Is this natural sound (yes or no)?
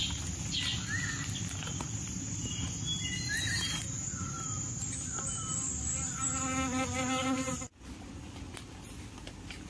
yes